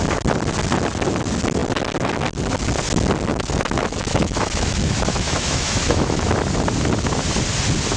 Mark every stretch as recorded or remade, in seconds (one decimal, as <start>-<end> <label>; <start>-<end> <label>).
0.0-3.3 recorded; 3.3-6.3 remade; 6.3-8.0 recorded